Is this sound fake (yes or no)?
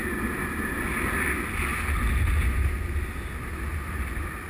no